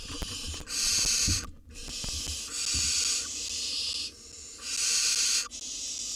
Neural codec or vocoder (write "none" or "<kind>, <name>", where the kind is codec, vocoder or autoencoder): none